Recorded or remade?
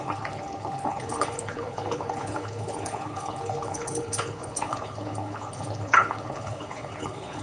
remade